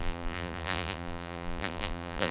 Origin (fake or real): fake